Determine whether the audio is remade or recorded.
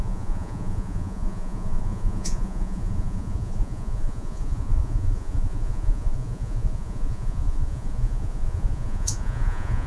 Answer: remade